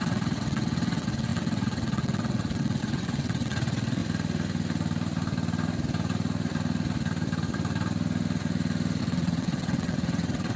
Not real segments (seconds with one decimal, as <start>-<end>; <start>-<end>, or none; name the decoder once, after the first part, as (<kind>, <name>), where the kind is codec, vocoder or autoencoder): 0.0-4.0 (vocoder, WaveNeXt); 9.0-10.6